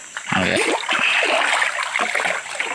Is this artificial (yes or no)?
no